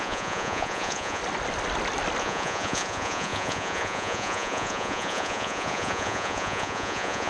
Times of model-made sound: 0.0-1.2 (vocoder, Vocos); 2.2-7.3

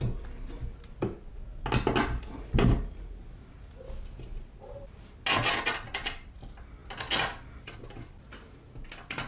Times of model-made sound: none

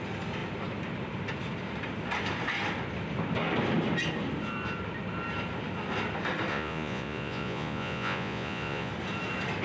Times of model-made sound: 6.5-8.9 (vocoder, Vocos)

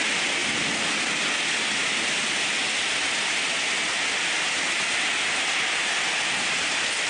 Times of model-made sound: none

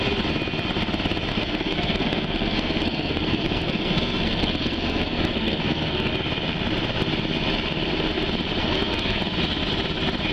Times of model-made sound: 1.3-6.1 (codec, SNAC); 8.6-9.2

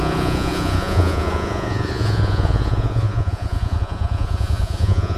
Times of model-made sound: 0.0-5.2 (vocoder, Vocos)

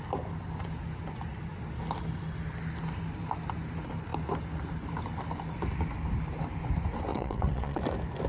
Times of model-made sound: 7.1-7.8 (vocoder, WaveNeXt)

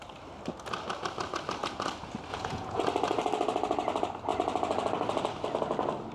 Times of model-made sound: 2.3-2.8 (vocoder, Vocos)